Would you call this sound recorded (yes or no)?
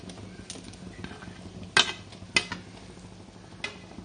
yes